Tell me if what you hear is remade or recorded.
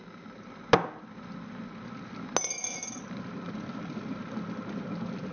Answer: recorded